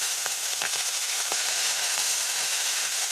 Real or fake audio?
fake